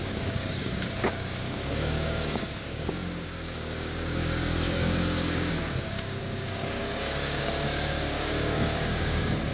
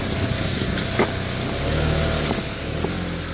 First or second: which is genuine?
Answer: second